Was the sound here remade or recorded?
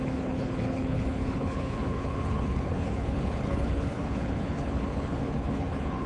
remade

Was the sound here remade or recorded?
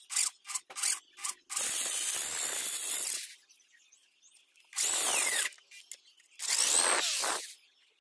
recorded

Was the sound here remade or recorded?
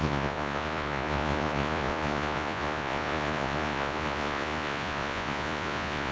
remade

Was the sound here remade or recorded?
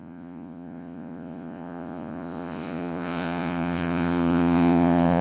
remade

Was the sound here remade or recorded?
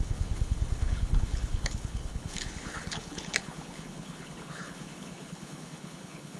remade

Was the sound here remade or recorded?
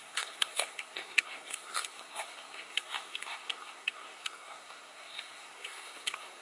remade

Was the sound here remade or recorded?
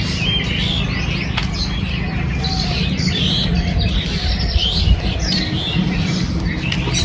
recorded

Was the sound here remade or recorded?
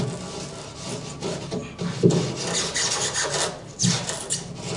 recorded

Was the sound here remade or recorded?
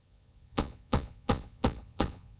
remade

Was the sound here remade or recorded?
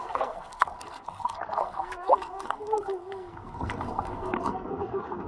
remade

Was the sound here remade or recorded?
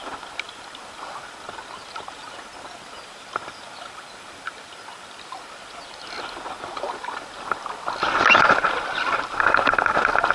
recorded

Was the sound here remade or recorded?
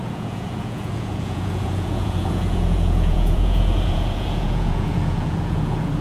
remade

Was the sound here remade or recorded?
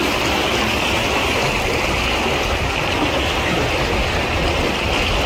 recorded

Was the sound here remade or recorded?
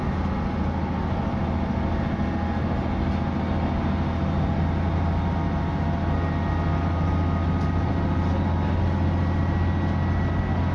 recorded